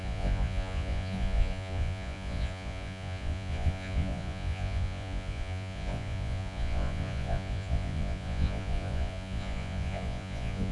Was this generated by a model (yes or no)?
yes